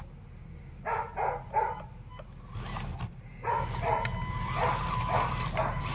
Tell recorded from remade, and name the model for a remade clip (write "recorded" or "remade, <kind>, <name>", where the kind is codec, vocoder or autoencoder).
recorded